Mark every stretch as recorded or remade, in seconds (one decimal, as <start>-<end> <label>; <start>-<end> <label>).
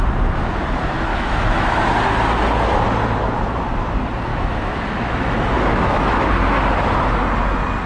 0.0-1.1 recorded; 1.1-1.9 remade; 1.9-4.3 recorded; 4.3-6.3 remade; 6.3-7.9 recorded